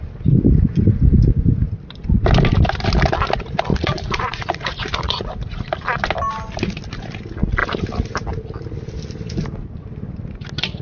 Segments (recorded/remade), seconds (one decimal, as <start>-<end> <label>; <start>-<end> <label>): 0.0-3.7 recorded; 3.7-5.3 remade; 5.3-10.8 recorded